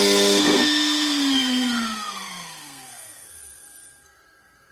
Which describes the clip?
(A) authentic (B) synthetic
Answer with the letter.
B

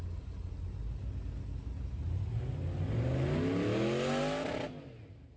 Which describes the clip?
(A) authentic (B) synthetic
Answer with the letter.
A